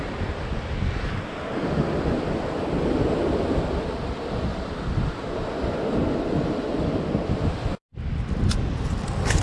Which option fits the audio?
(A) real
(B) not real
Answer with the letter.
A